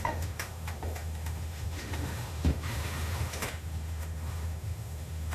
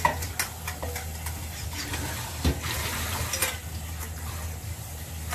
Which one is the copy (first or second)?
first